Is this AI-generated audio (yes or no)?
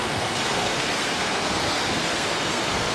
yes